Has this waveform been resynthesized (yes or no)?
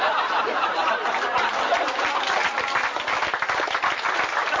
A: no